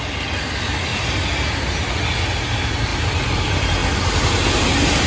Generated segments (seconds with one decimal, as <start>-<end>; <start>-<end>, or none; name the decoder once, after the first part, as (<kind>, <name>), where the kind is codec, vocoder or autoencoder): none